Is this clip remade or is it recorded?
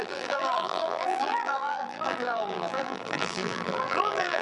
remade